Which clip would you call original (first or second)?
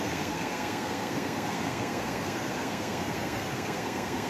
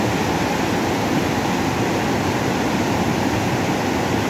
second